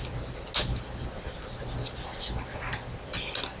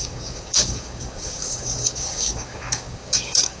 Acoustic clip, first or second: first